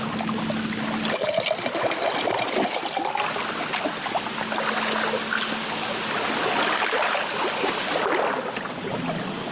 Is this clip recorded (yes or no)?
yes